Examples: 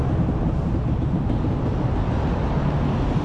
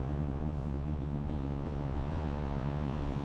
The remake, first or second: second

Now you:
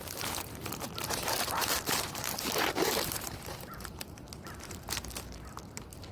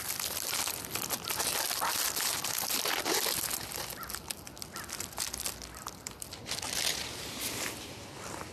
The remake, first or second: first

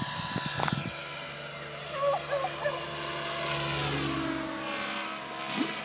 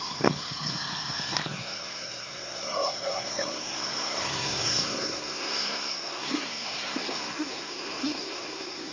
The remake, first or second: second